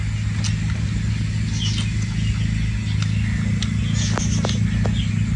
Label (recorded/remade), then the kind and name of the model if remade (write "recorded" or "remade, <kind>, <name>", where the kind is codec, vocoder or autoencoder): recorded